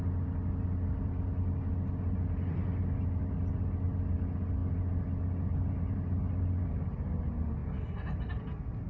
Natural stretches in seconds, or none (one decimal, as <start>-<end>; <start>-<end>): 0.0-8.9